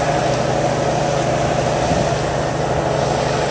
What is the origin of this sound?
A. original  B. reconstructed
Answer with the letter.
A